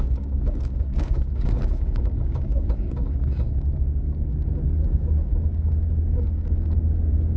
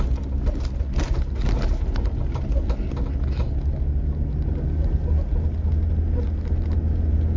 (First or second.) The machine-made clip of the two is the first